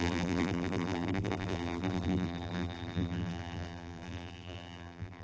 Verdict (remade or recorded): remade